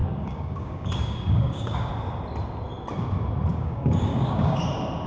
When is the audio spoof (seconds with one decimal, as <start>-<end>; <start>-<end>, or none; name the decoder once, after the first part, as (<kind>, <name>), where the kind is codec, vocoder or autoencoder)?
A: 0.0-1.9 (codec, DAC); 3.5-4.6